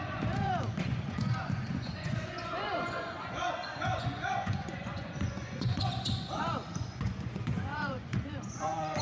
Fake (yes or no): yes